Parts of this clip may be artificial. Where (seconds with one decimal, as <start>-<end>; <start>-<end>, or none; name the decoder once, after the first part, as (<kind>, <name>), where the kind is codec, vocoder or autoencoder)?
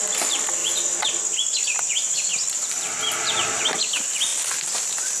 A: none